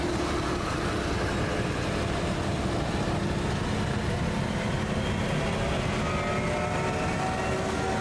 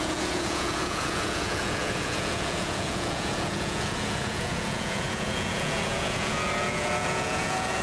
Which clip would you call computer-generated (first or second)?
second